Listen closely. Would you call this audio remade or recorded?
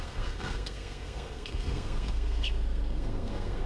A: remade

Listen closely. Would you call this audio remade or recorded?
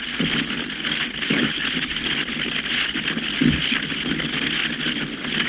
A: recorded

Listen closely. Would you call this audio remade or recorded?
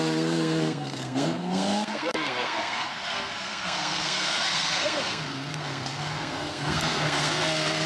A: remade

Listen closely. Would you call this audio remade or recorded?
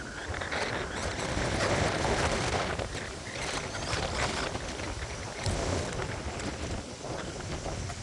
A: recorded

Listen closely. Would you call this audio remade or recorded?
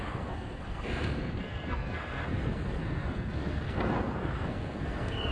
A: remade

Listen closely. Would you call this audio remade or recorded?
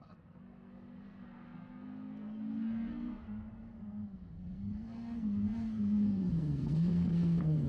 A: remade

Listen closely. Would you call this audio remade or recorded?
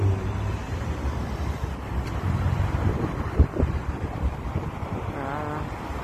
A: recorded